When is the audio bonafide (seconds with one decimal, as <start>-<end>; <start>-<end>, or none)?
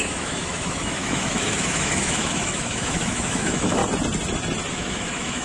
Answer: 3.8-4.7